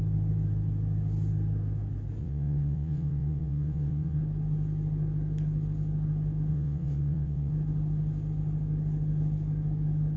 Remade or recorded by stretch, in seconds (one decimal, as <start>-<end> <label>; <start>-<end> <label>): 0.0-2.2 recorded; 2.2-4.2 remade; 4.2-6.5 recorded; 6.5-7.5 remade; 7.5-10.2 recorded